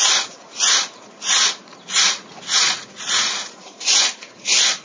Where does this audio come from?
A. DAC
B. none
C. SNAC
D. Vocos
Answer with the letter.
D